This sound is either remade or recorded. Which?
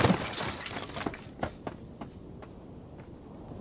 recorded